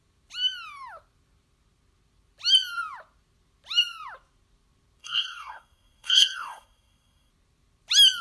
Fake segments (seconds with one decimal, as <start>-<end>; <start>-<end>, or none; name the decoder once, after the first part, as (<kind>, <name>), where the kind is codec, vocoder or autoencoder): 5.0-7.3 (codec, SNAC)